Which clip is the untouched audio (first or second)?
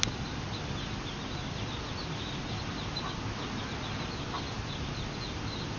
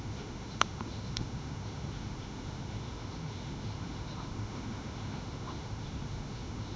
first